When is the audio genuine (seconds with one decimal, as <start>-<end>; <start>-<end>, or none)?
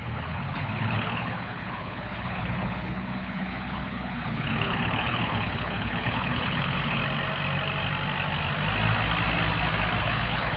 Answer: 7.0-10.0